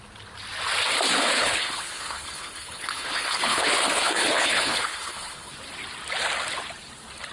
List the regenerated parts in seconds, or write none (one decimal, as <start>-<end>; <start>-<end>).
1.3-5.5